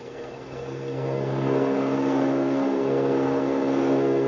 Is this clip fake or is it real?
fake